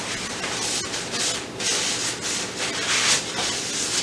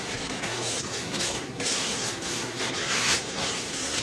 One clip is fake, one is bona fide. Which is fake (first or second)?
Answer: second